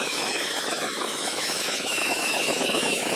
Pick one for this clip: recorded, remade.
remade